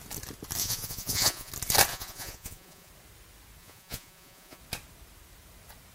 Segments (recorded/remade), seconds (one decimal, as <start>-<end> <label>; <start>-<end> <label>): 0.0-0.6 recorded; 0.6-1.5 remade; 1.5-1.9 recorded; 1.9-2.9 remade; 2.9-3.6 recorded; 3.6-4.6 remade; 4.6-5.9 recorded